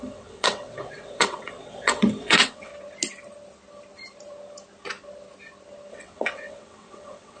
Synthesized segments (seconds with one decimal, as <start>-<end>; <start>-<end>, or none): 0.0-2.7; 5.9-7.4